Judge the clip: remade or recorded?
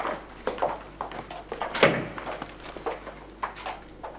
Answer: recorded